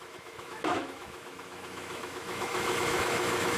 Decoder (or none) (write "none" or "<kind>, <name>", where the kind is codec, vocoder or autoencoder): autoencoder, DAC-VAE